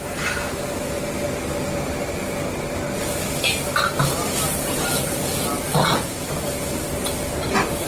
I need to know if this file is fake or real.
real